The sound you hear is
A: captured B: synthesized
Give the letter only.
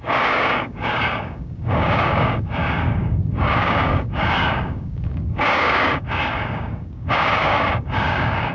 B